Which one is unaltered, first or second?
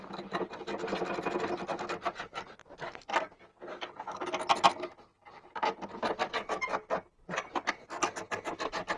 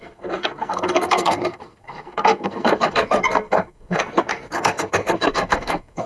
first